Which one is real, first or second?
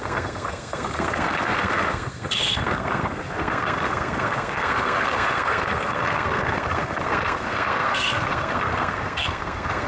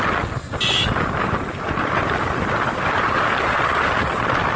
second